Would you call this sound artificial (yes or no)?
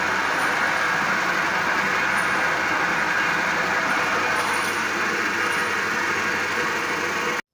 no